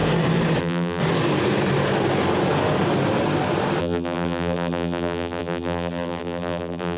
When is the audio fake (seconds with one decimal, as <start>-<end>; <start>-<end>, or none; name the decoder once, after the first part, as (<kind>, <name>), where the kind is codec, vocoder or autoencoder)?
0.6-1.0 (vocoder, BigVGAN v2); 3.8-7.0